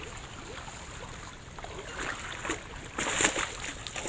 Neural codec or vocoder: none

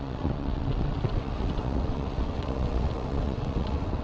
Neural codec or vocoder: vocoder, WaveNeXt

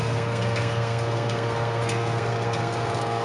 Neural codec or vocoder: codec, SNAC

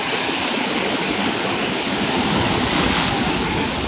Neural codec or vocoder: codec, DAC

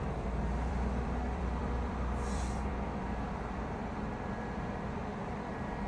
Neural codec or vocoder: vocoder, BigVGAN v2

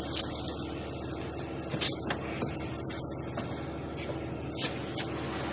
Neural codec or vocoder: none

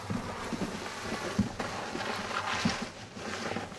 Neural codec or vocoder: none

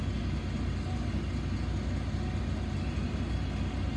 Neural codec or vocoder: none